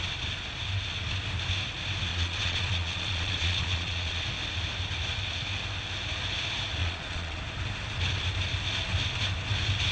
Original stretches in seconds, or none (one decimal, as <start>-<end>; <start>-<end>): 0.0-2.1; 4.2-6.8; 7.4-9.9